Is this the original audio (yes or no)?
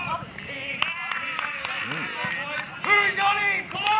yes